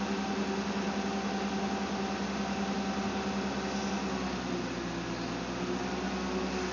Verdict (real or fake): real